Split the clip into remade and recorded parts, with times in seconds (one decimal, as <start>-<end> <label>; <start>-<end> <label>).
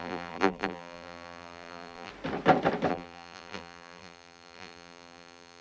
0.0-2.1 remade; 2.1-2.9 recorded; 2.9-5.6 remade